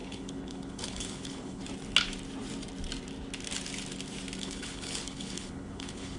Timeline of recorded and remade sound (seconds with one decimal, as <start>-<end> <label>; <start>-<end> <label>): 0.0-1.6 remade; 1.6-4.4 recorded; 4.4-6.2 remade